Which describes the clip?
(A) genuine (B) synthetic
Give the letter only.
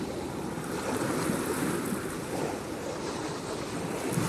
A